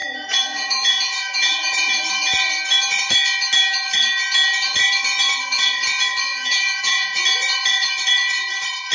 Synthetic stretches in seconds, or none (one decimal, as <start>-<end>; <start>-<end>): 0.0-2.0; 6.3-7.2